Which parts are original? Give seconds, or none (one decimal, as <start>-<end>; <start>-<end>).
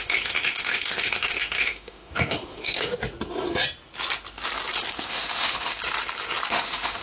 3.0-4.9; 5.8-6.5